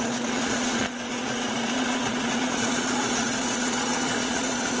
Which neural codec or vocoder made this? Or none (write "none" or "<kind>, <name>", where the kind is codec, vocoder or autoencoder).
vocoder, Vocos